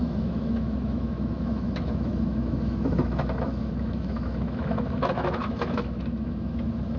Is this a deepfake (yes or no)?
yes